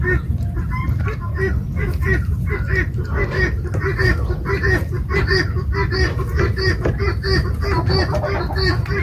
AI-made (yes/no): no